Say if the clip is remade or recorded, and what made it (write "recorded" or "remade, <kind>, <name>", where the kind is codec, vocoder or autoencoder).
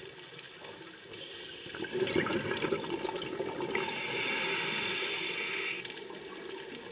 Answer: recorded